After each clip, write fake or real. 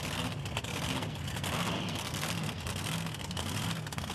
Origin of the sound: fake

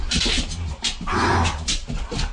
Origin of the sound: real